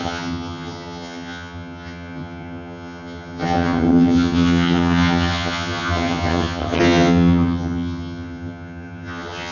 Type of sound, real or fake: fake